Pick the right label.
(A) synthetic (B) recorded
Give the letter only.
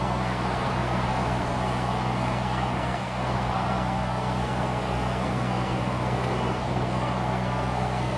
A